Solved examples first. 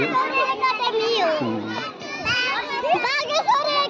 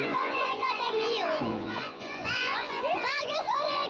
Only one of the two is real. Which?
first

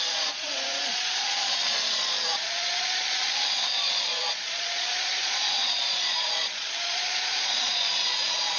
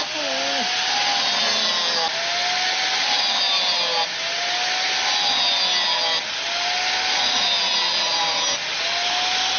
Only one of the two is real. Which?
second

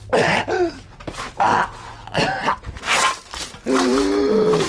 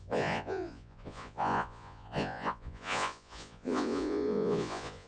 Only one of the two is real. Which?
first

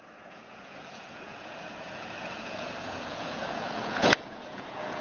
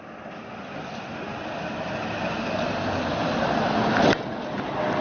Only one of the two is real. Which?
second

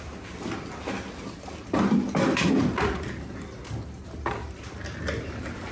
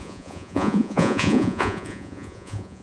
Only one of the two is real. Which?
first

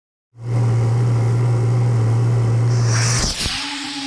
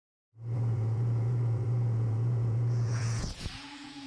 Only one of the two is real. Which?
first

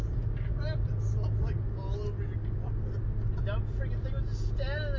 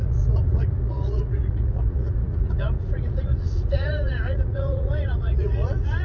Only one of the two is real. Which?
first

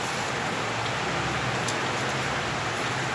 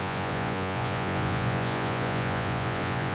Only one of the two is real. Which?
first